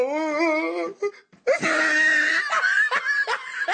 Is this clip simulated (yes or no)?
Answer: no